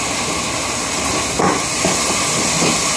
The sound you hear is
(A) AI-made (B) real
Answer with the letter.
B